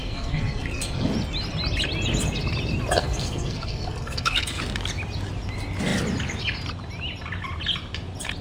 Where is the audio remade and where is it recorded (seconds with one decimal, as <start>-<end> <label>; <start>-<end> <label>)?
0.0-1.1 remade; 1.1-3.0 recorded; 3.0-4.6 remade; 4.6-8.4 recorded